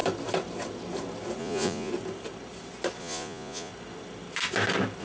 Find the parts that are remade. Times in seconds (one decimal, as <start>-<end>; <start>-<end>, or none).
1.4-1.9; 3.0-3.7